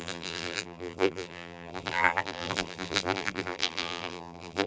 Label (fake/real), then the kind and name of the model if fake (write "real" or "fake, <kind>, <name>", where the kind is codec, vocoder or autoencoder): fake, vocoder, BigVGAN v2